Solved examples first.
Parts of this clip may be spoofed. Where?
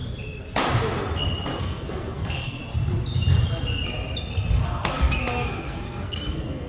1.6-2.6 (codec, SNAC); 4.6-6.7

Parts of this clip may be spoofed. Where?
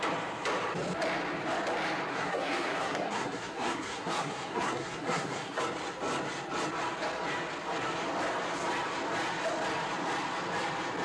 2.1-5.6 (codec, SNAC)